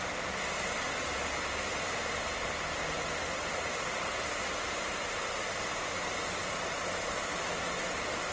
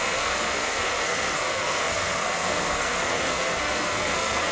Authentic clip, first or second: first